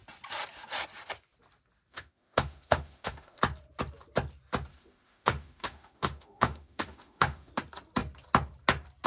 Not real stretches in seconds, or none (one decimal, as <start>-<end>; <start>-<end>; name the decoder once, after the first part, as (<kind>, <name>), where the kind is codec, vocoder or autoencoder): 1.9-3.4 (autoencoder, DAC-VAE); 4.7-7.5